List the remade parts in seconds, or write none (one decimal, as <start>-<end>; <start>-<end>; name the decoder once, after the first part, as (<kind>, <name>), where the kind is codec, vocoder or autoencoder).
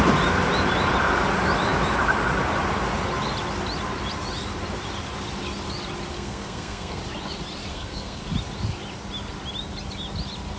6.1-7.0 (codec, SNAC); 7.7-8.2